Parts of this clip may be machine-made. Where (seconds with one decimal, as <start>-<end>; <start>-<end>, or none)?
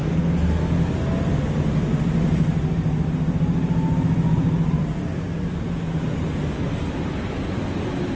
none